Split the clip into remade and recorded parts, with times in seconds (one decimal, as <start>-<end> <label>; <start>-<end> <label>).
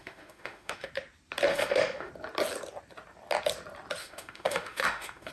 0.0-0.9 remade; 0.9-1.5 recorded; 1.5-2.1 remade; 2.1-4.0 recorded; 4.0-5.3 remade